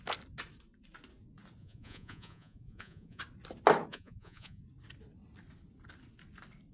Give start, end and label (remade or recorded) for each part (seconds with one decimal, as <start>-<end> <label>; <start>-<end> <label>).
0.0-1.6 recorded; 1.6-3.2 remade; 3.2-3.9 recorded; 3.9-4.6 remade; 4.6-6.7 recorded